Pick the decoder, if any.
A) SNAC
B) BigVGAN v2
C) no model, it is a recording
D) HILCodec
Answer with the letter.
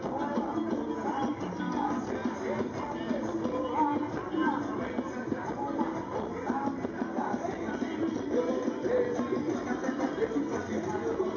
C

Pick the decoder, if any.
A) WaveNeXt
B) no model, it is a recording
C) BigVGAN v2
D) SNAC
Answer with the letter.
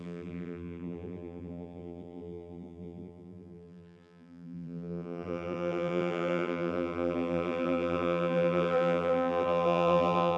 C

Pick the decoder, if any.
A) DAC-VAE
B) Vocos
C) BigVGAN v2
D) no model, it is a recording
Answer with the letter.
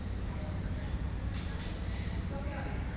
C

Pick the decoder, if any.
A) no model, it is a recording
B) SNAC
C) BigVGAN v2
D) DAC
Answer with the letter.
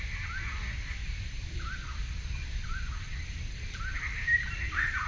A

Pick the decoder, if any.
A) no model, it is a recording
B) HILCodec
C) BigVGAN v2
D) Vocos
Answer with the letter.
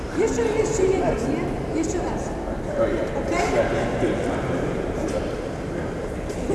C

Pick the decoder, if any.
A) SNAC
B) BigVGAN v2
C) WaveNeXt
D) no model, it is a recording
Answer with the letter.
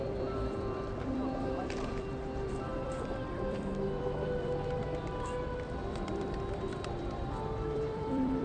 B